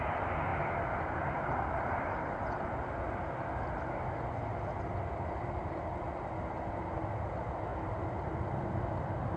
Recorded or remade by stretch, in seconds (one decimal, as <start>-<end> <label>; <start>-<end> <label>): 0.0-9.4 recorded